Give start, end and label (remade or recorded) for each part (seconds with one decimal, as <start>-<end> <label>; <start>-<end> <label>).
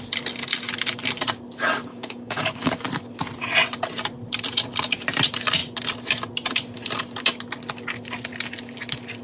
0.0-1.9 recorded; 1.9-2.7 remade; 2.7-9.2 recorded